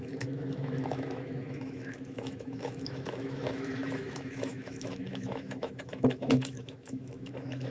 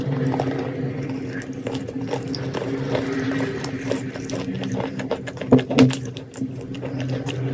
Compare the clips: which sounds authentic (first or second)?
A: second